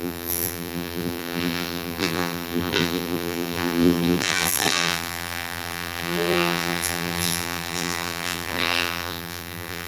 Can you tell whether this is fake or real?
fake